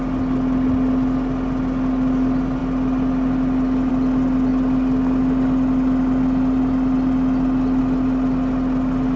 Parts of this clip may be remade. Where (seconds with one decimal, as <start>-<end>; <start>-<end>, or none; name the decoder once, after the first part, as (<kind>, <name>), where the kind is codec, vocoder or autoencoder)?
none